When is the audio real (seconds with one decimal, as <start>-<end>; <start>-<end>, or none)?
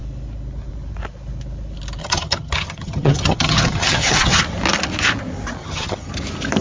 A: 0.0-2.0; 4.4-5.6; 6.1-6.6